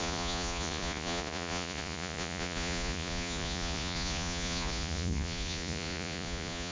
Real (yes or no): no